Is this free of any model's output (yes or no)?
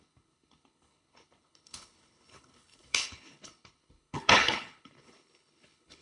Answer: no